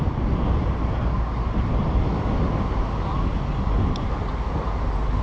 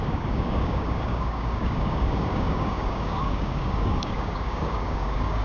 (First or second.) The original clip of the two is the first